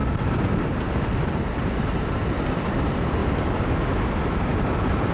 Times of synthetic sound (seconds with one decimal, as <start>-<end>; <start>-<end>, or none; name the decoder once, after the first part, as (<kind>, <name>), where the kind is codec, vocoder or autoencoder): 1.4-3.2 (vocoder, BigVGAN v2); 4.4-5.1